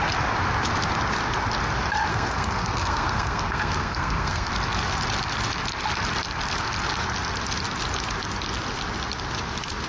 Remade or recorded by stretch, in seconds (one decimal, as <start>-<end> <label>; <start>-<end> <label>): 0.0-2.1 recorded; 2.1-4.5 remade; 4.5-9.9 recorded